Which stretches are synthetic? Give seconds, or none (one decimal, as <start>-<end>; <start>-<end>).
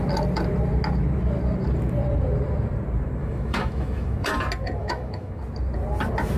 3.2-4.3; 4.8-5.4